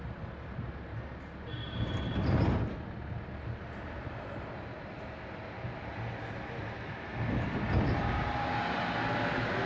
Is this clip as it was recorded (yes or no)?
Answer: yes